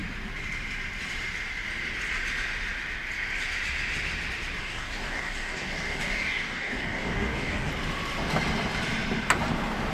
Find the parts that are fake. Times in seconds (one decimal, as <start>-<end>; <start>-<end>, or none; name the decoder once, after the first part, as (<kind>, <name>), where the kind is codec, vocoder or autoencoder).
4.6-7.7 (codec, DAC)